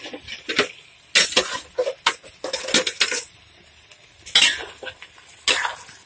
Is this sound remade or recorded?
recorded